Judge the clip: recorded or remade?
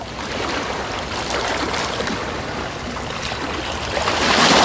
recorded